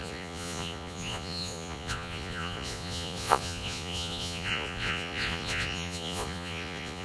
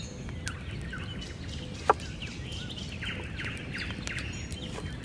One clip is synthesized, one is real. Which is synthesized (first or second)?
first